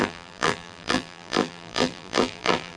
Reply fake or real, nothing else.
fake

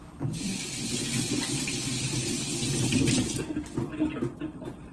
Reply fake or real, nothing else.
fake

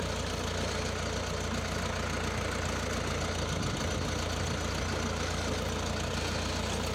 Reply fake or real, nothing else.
real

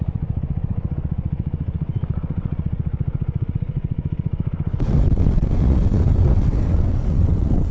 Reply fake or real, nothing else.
fake